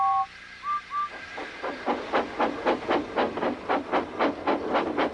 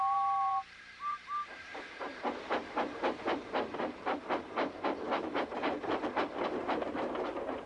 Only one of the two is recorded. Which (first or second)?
first